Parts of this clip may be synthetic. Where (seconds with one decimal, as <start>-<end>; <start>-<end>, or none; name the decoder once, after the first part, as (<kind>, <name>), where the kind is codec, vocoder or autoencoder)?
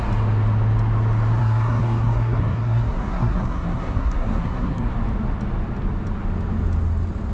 1.4-4.9 (codec, SNAC)